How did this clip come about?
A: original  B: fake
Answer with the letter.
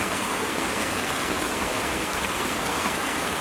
B